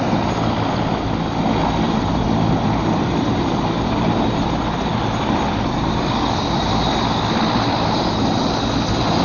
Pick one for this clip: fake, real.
real